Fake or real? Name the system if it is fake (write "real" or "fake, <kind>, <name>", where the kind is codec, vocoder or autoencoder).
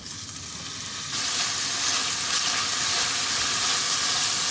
real